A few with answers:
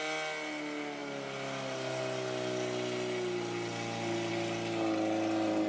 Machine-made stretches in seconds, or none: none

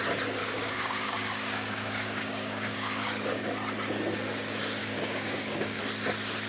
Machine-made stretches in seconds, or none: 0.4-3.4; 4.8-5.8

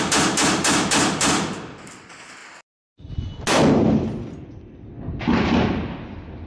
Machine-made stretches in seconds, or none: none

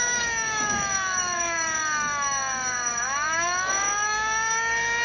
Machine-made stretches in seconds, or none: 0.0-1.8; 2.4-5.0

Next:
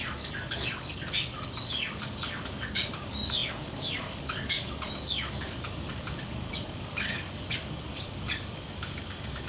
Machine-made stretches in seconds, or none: 0.0-9.5

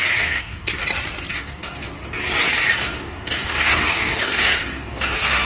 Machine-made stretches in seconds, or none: 0.0-0.8; 1.3-1.9; 2.8-5.4

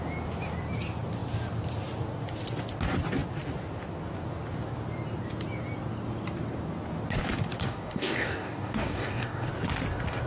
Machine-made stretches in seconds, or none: 7.6-9.5

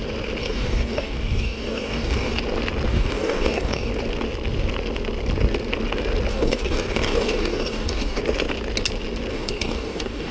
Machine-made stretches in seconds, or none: 0.4-2.4; 2.9-3.9; 6.3-8.2; 9.3-10.3